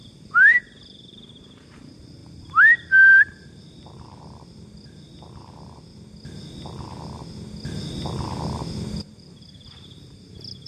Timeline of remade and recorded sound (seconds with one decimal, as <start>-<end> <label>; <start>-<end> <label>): 0.0-5.9 remade; 5.9-9.0 recorded; 9.0-10.7 remade